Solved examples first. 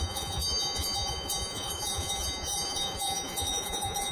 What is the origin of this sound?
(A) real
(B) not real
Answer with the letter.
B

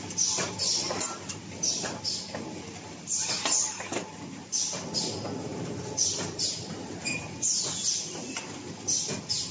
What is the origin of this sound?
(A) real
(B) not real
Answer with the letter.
A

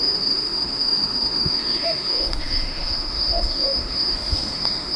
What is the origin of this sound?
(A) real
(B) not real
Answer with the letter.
B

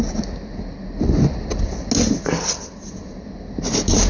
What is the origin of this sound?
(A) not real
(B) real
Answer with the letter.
B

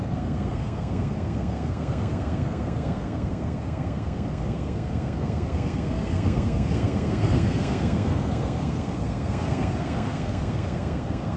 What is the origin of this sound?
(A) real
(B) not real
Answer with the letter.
B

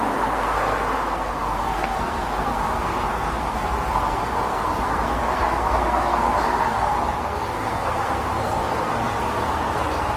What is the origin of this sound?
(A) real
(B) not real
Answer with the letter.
B